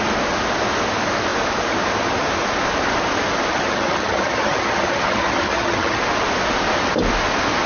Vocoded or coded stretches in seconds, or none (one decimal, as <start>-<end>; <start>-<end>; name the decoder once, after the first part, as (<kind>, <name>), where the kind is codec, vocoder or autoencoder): 3.5-6.0 (vocoder, HiFi-GAN)